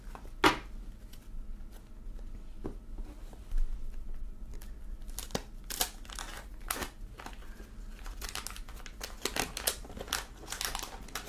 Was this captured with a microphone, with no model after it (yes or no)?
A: yes